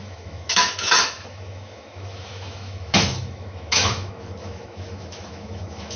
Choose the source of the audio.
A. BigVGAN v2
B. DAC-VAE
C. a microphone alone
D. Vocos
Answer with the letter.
B